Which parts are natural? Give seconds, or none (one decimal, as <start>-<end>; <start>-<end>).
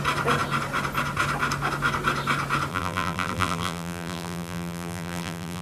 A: 0.0-2.7